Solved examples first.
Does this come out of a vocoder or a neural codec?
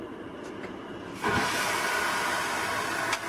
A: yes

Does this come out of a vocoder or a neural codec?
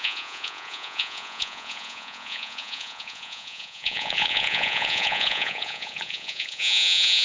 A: yes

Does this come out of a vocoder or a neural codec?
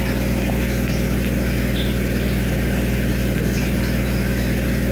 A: no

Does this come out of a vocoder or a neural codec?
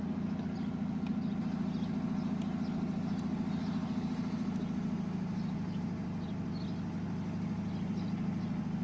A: no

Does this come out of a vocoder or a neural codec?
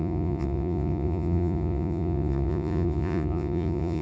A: yes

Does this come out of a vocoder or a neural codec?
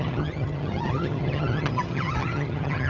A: yes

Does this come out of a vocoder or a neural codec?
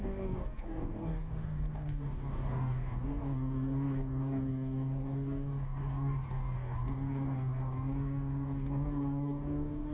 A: yes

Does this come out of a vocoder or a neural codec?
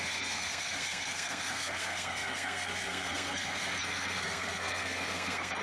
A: yes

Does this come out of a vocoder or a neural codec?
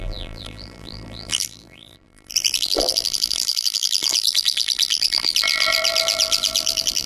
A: yes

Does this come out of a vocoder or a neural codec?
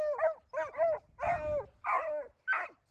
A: no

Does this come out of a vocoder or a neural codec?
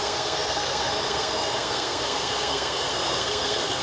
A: yes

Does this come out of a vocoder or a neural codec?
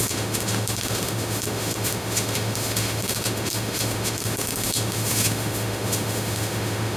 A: yes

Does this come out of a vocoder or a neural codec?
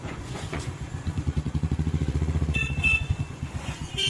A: yes